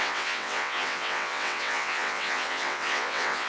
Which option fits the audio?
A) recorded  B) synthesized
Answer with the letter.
B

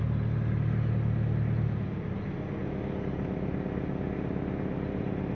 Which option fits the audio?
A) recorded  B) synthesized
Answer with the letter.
A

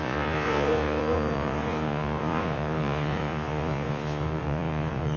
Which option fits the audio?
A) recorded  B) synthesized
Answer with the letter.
B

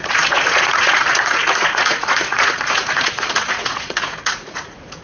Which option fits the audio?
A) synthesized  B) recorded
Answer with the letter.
A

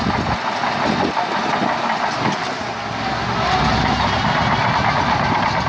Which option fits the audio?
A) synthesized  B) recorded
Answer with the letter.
B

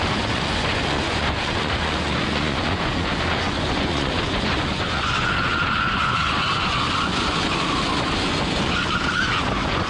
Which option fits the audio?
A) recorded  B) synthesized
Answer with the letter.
B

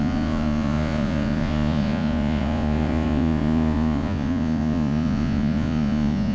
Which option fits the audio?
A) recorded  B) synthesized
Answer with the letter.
B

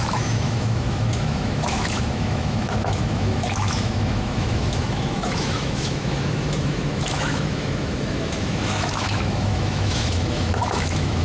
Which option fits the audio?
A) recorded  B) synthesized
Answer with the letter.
B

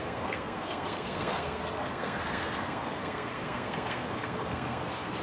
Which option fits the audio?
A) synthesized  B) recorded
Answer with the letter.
A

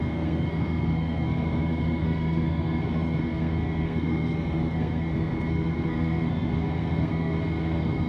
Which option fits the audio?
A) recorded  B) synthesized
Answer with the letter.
B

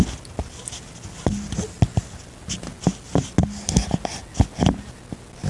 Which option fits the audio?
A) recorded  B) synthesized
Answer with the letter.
A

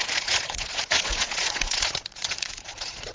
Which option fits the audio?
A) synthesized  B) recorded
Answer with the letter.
A